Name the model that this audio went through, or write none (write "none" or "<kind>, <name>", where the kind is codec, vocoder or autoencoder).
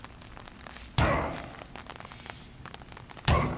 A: none